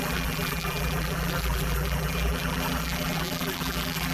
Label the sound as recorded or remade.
remade